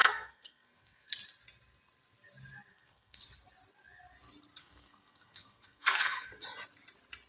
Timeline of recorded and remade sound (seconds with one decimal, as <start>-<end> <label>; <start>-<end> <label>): 0.0-1.1 remade; 1.1-2.7 recorded; 2.7-3.2 remade; 3.2-4.6 recorded; 4.6-6.3 remade; 6.3-7.3 recorded